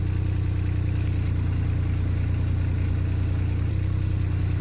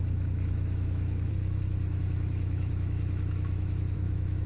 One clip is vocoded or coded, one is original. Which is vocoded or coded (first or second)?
second